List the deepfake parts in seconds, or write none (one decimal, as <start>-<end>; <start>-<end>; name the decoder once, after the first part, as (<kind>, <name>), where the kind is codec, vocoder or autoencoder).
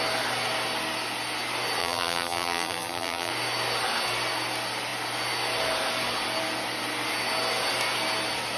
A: 1.8-3.3 (vocoder, BigVGAN v2)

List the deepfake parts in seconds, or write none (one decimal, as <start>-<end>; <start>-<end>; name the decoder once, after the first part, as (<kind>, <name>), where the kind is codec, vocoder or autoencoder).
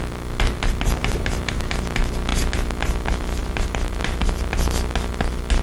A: 1.0-1.6 (vocoder, BigVGAN v2); 3.4-4.0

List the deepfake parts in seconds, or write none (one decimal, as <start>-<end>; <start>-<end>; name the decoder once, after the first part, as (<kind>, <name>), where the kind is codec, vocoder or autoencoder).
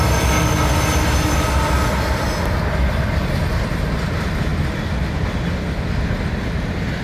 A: none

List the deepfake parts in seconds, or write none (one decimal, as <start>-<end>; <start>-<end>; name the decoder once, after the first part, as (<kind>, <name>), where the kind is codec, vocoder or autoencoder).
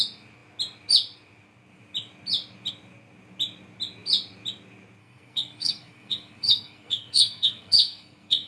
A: 5.0-8.5 (codec, SNAC)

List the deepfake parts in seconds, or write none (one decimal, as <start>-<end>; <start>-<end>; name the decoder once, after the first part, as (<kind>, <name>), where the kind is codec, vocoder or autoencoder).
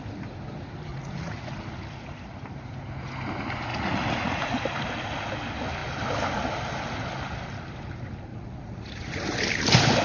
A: 0.9-1.5 (vocoder, Vocos); 3.7-4.5; 8.3-9.2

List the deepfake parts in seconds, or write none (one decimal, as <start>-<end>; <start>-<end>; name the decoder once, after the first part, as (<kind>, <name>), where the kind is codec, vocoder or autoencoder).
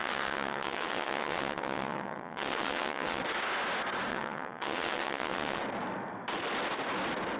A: 0.0-3.2 (vocoder, WaveNeXt); 4.1-5.6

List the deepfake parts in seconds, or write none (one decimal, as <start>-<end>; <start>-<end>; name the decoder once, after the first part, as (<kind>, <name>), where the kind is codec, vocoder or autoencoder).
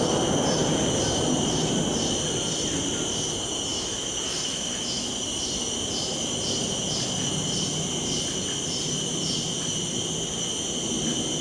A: 3.7-5.1 (autoencoder, DAC-VAE)